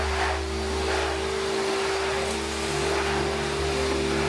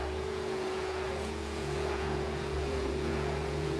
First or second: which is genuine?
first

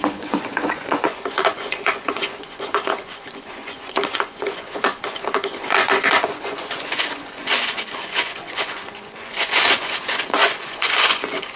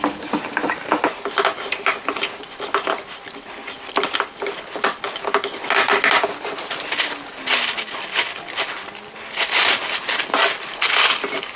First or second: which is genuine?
second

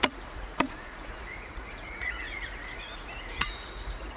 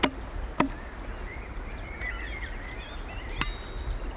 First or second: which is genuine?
second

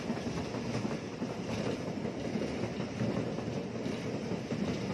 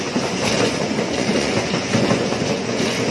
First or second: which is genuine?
first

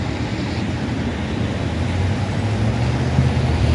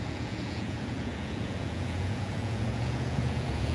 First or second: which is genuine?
first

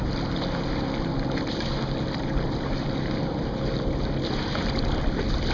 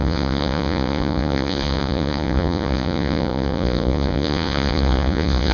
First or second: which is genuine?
first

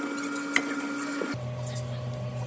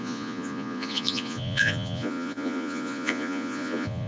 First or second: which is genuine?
first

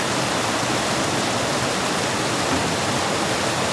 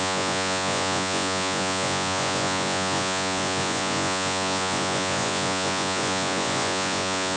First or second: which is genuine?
first